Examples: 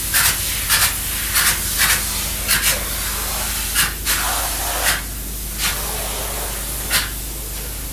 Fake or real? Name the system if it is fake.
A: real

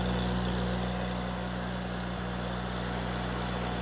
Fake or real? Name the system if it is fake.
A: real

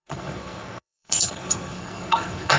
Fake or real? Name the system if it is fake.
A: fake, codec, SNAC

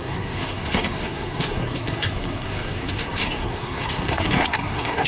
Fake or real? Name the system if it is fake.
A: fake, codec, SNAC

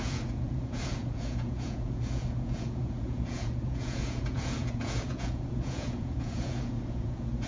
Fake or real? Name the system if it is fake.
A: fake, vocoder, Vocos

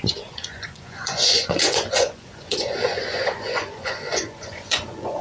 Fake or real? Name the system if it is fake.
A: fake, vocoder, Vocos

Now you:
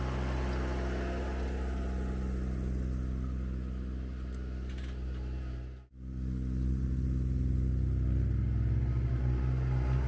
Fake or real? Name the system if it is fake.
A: real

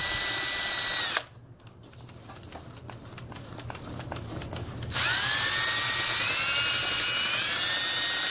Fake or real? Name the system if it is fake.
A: real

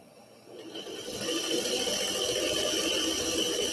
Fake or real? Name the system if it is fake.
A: real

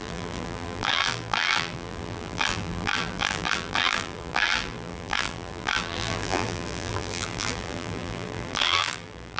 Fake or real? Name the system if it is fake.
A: fake, vocoder, BigVGAN v2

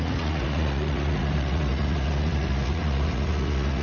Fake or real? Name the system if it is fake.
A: fake, vocoder, Vocos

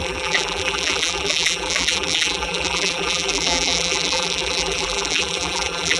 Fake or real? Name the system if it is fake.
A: fake, vocoder, BigVGAN v2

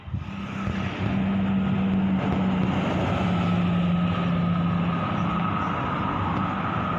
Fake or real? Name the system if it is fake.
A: real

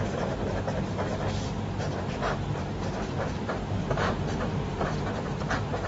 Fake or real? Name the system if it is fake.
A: fake, vocoder, BigVGAN v2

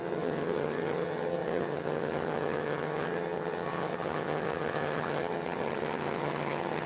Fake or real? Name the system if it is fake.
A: fake, vocoder, HiFi-GAN